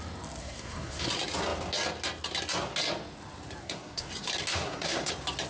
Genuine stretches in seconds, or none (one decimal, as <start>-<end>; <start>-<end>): 0.0-0.4; 1.1-3.6; 4.1-4.5; 5.1-5.5